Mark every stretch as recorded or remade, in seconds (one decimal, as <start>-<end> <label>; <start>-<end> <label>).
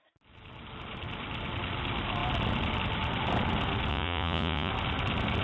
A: 0.0-3.9 recorded; 3.9-4.7 remade; 4.7-5.4 recorded